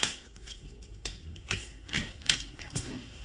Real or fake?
fake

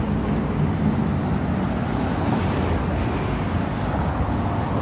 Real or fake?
real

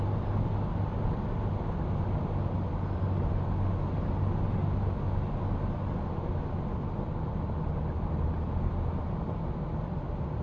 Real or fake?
real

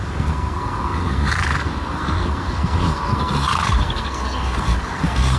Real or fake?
fake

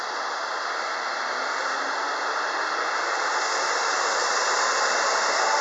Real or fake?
real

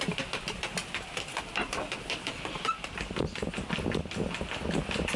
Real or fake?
real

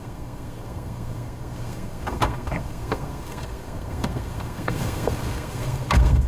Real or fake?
fake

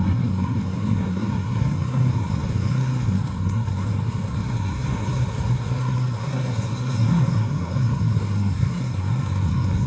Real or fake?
fake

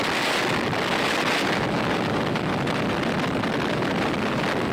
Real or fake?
real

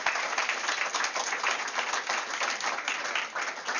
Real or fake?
real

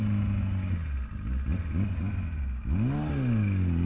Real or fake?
real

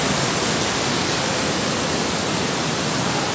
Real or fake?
real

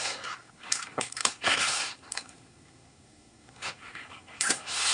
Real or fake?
fake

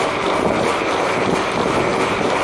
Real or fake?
real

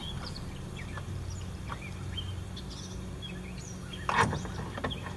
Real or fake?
real